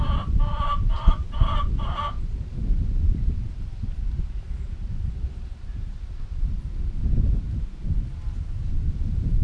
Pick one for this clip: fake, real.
fake